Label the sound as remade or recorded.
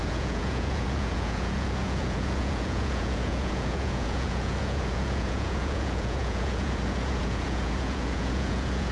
remade